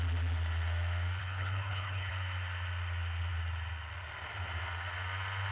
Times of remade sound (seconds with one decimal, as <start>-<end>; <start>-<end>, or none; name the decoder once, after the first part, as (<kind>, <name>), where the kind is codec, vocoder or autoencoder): 1.2-2.1 (codec, HILCodec)